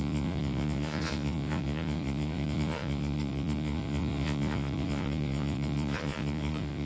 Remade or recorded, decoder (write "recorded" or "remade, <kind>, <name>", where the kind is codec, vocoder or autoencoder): remade, vocoder, Vocos